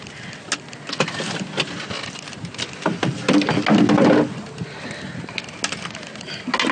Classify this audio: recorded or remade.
recorded